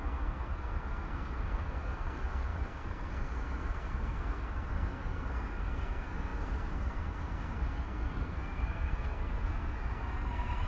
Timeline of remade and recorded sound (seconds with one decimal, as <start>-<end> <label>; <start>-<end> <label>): 0.0-10.7 remade